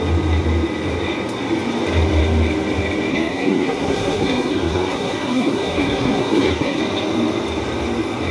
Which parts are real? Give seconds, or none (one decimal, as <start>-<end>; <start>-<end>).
0.0-3.1; 6.8-8.3